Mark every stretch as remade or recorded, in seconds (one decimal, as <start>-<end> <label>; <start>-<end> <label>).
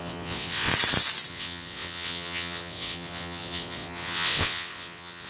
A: 0.0-0.7 remade; 0.7-1.3 recorded; 1.3-5.3 remade